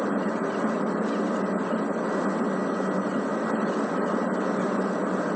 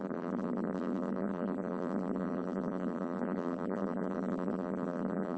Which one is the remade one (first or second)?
second